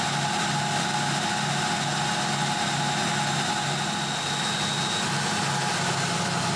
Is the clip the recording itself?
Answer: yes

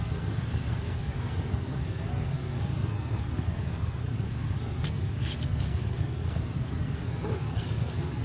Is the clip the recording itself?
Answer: no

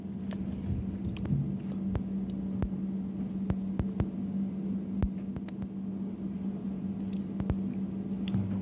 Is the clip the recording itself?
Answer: yes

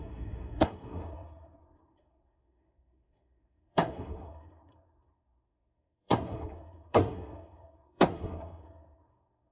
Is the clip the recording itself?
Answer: no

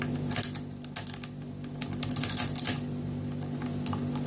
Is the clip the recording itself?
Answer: yes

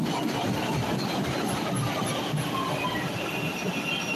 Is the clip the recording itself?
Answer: yes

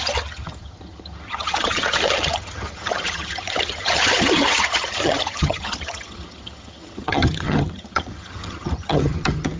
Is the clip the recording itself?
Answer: no